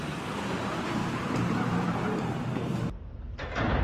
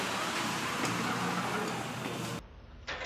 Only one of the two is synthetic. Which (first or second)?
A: first